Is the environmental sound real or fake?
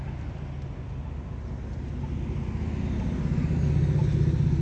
real